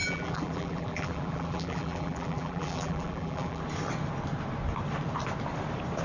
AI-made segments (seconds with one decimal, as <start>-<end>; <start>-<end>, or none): 0.0-3.6